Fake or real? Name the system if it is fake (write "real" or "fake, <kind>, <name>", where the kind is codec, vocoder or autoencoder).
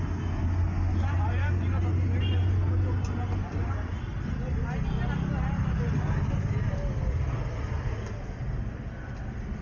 real